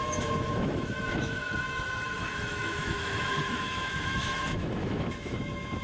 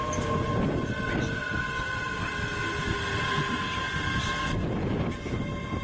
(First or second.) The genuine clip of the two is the second